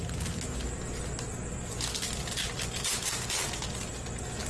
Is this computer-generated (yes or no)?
no